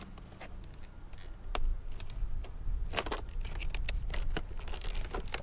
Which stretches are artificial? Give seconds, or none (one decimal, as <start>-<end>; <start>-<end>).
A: none